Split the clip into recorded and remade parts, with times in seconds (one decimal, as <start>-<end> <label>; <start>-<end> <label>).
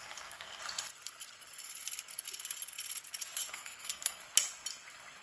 0.0-0.6 remade; 0.6-3.5 recorded; 3.5-4.2 remade; 4.2-5.2 recorded